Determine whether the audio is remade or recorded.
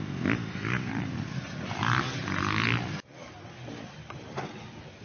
recorded